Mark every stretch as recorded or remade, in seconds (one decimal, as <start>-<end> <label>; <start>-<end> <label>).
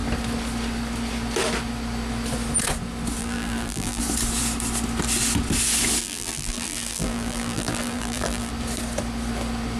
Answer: 0.0-3.2 recorded; 3.2-4.0 remade; 4.0-6.0 recorded; 6.0-8.5 remade; 8.5-9.8 recorded